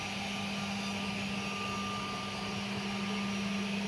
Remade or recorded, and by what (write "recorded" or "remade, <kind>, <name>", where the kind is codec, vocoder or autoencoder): recorded